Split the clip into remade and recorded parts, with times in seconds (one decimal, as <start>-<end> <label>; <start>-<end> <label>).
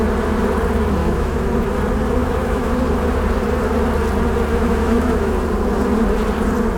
0.0-1.0 recorded; 1.0-1.5 remade; 1.5-2.2 recorded; 2.2-2.8 remade; 2.8-4.5 recorded; 4.5-5.3 remade; 5.3-6.8 recorded